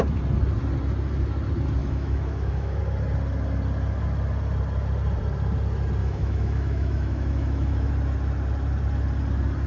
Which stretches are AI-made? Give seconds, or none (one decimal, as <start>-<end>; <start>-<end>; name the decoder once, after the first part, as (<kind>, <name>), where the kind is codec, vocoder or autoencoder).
1.8-2.8 (autoencoder, DAC-VAE); 6.0-7.9

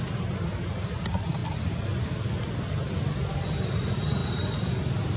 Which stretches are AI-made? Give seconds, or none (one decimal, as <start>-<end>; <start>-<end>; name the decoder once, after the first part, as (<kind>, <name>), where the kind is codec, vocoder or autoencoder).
0.0-1.4 (vocoder, BigVGAN v2); 3.3-5.2

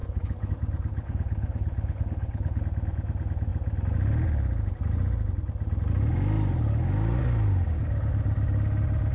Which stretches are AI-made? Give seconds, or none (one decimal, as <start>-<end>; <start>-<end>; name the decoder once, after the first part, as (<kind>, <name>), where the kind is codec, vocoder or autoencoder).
0.0-0.5 (codec, HILCodec); 0.9-2.6

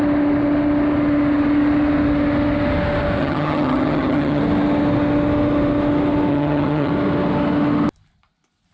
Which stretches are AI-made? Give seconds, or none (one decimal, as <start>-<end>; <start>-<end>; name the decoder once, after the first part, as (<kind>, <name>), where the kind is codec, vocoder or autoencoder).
3.2-4.4 (vocoder, HiFi-GAN); 6.3-6.9

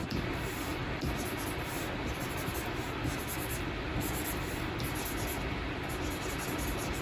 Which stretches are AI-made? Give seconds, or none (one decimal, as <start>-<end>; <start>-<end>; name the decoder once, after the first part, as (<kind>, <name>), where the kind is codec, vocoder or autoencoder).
0.7-3.0 (vocoder, BigVGAN v2)

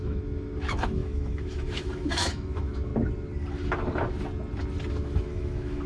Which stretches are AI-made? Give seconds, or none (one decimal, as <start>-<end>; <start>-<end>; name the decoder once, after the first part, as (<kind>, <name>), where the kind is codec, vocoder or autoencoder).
0.0-2.9 (autoencoder, DAC-VAE); 4.9-5.9

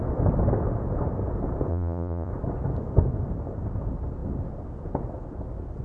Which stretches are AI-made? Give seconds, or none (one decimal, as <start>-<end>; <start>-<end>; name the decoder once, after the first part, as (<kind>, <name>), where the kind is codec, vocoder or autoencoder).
1.7-2.3 (vocoder, Vocos)